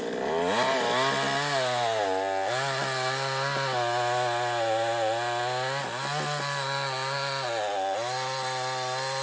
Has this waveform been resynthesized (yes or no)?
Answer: no